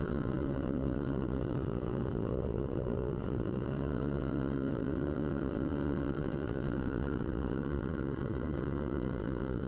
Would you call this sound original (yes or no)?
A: no